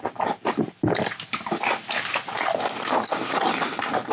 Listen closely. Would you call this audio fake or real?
real